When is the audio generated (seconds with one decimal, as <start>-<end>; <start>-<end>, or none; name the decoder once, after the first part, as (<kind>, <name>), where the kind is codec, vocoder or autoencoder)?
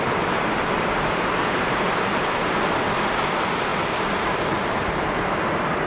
none